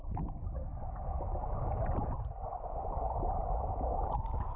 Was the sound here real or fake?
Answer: real